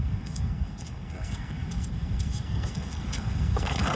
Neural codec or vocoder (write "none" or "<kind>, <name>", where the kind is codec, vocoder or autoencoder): codec, SNAC